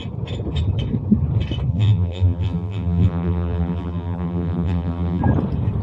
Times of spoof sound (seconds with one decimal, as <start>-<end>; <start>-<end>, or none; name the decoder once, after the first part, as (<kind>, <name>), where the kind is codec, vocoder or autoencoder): 1.7-5.2 (vocoder, BigVGAN v2)